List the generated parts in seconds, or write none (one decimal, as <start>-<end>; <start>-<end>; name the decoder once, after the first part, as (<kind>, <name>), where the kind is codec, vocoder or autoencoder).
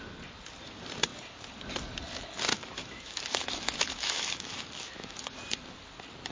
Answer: 2.5-5.4 (autoencoder, DAC-VAE)